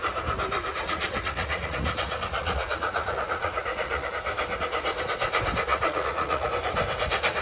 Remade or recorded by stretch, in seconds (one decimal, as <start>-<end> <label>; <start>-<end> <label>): 0.0-0.7 recorded; 0.7-4.1 remade; 4.1-5.7 recorded; 5.7-6.5 remade; 6.5-7.4 recorded